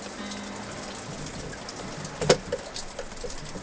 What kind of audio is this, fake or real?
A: real